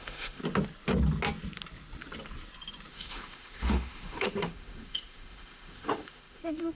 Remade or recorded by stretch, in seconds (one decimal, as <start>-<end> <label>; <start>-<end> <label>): 0.0-0.4 remade; 0.4-2.9 recorded; 2.9-6.7 remade